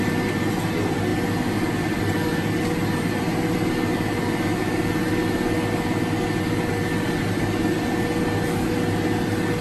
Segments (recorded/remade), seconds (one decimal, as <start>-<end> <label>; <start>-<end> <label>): 0.0-9.6 recorded